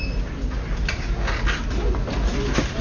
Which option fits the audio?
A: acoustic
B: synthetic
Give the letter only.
A